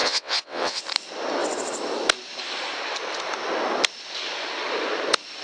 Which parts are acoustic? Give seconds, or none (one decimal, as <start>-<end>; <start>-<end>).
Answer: 0.8-5.4